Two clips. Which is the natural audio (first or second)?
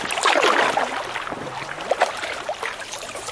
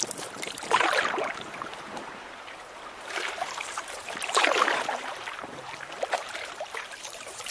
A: first